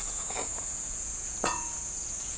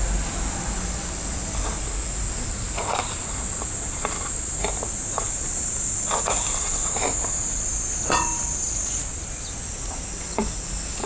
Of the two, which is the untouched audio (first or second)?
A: second